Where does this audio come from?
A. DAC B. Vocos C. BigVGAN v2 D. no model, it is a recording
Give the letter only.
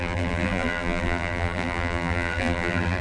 C